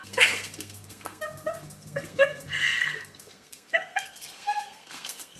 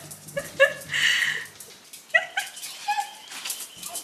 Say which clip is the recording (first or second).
second